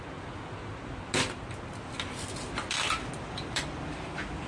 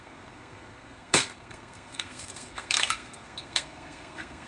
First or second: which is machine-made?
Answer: second